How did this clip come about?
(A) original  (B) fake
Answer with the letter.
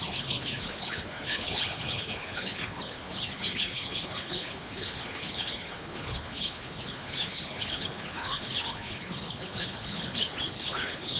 B